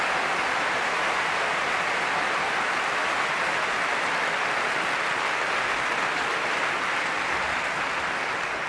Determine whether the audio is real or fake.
real